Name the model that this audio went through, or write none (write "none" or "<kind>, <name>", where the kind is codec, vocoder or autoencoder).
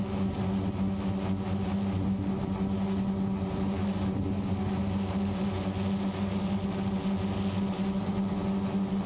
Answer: none